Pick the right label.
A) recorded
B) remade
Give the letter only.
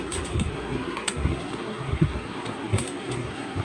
B